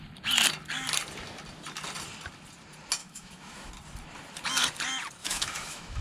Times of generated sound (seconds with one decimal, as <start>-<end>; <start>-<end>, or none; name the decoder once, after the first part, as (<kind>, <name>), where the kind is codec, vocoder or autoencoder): 3.0-3.7 (autoencoder, DAC-VAE); 5.2-6.0